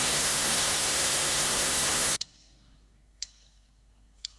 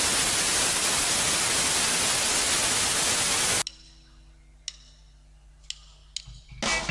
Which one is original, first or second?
second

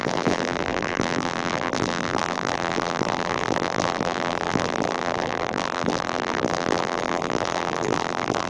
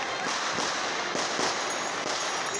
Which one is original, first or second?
second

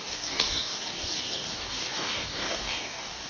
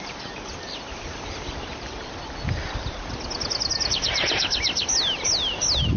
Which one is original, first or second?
second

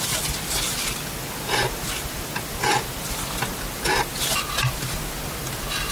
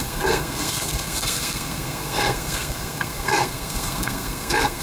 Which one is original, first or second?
first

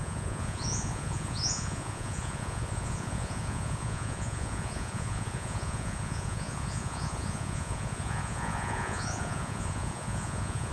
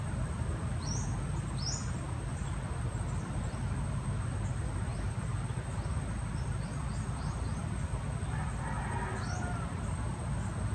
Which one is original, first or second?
second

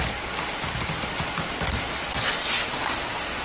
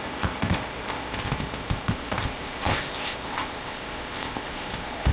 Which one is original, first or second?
first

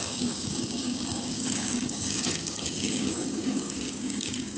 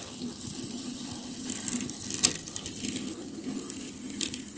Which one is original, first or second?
second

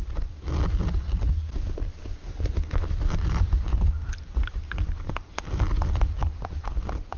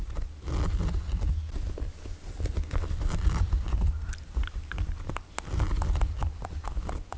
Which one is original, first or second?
second